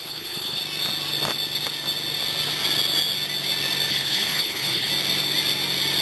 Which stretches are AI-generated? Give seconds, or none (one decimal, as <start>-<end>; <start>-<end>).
0.0-0.6; 3.9-4.9